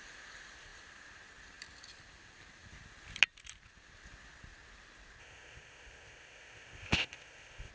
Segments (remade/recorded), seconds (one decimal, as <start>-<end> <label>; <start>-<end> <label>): 0.0-5.2 recorded; 5.2-7.7 remade

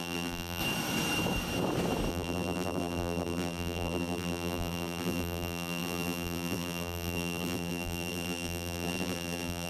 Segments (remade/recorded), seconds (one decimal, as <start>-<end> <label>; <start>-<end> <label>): 0.0-0.6 remade; 0.6-2.1 recorded; 2.1-9.7 remade

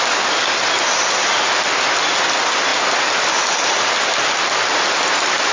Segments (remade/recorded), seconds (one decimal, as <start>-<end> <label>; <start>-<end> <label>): 0.0-5.5 recorded

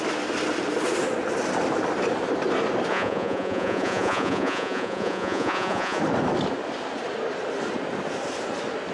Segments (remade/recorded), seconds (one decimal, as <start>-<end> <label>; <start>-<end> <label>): 0.0-2.9 recorded; 2.9-6.0 remade; 6.0-8.9 recorded